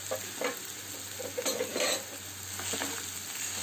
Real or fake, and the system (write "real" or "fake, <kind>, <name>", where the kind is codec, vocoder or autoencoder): real